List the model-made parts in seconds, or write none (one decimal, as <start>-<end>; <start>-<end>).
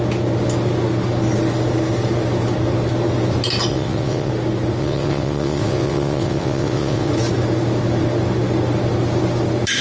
3.7-4.3; 4.8-7.1